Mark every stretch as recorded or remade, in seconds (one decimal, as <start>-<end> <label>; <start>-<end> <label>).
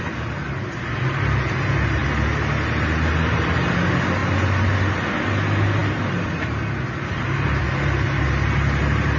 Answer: 0.0-9.2 recorded